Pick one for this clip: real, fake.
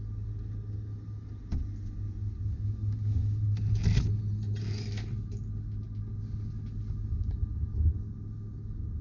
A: real